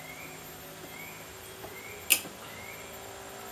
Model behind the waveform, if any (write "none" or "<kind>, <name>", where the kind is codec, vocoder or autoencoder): none